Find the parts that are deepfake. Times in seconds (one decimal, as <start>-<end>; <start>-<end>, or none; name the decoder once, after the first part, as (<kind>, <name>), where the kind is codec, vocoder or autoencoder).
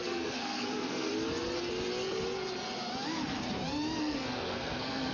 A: 0.0-1.1 (codec, SNAC); 4.0-5.1